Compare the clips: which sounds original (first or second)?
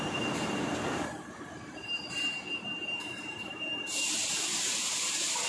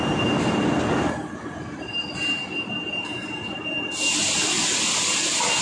second